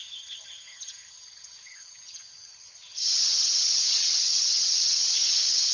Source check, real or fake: fake